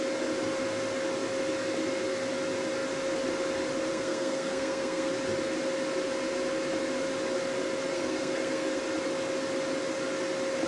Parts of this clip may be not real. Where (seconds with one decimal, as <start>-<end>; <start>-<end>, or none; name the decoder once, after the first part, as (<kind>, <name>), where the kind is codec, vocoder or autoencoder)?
3.9-5.1 (codec, SNAC); 7.9-8.8